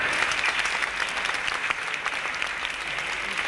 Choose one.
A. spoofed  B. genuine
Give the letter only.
B